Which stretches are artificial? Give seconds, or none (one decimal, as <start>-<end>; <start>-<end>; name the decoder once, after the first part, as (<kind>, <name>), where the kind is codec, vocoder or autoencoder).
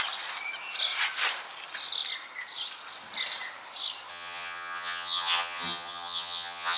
4.1-6.8 (vocoder, HiFi-GAN)